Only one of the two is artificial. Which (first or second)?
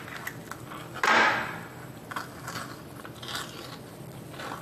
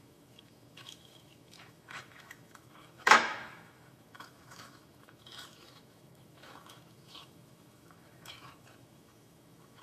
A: second